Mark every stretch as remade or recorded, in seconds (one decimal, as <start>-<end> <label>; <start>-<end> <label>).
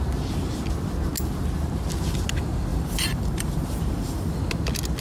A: 0.0-2.7 recorded; 2.7-4.4 remade; 4.4-5.0 recorded